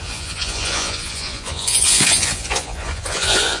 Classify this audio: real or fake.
fake